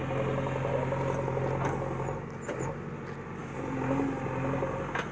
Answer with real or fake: real